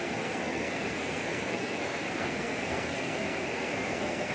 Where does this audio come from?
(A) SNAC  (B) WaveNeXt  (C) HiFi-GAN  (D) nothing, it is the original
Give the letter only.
A